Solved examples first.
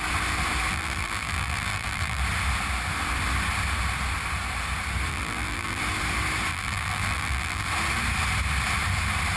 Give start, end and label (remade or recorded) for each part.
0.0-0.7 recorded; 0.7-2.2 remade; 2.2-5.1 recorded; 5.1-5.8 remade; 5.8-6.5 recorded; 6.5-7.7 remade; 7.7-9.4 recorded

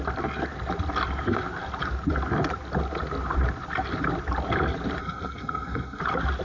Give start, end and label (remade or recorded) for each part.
0.0-5.0 recorded; 5.0-6.0 remade; 6.0-6.4 recorded

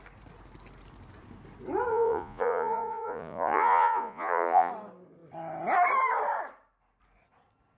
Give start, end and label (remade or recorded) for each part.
0.0-1.9 recorded; 1.9-4.7 remade; 4.7-7.8 recorded

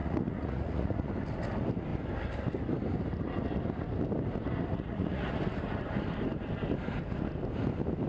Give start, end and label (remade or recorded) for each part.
0.0-1.1 remade; 1.1-4.7 recorded; 4.7-5.3 remade; 5.3-8.1 recorded

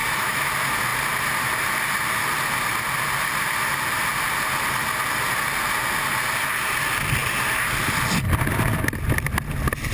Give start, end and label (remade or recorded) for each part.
0.0-0.5 remade; 0.5-9.9 recorded